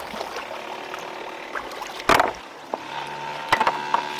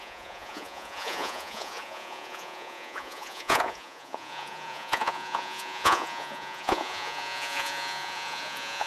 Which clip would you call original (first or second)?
first